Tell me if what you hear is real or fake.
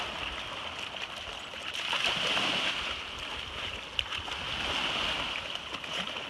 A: real